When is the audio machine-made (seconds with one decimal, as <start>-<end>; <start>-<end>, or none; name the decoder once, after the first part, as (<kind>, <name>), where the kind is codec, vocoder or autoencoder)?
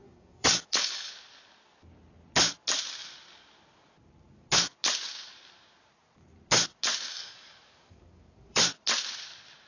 0.0-1.1 (codec, DAC); 7.1-8.6